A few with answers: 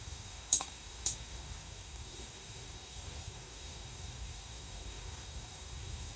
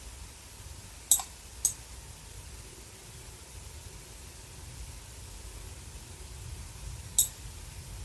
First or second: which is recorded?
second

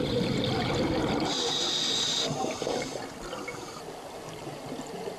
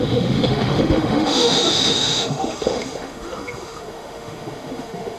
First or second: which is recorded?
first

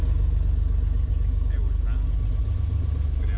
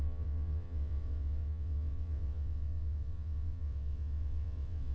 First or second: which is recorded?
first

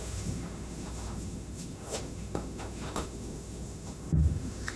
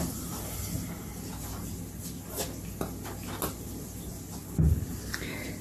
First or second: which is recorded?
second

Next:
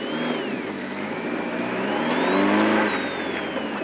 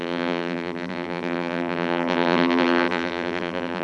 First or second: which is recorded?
first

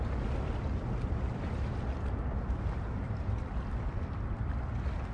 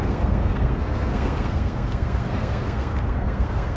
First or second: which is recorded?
first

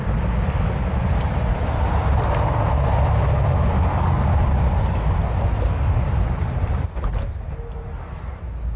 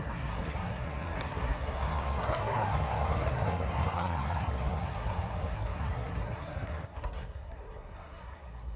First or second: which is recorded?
first